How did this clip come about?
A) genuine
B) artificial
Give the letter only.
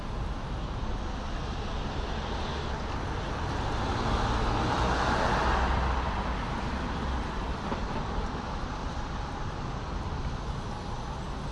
A